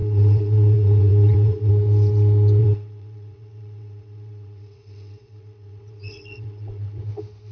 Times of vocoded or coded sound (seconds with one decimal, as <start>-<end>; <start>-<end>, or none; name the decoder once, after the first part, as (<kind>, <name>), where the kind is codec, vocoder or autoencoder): 0.0-1.7 (vocoder, WaveNeXt); 2.6-7.0